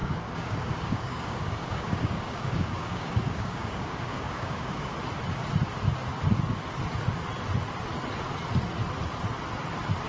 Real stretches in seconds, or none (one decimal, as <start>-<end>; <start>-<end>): 4.9-10.1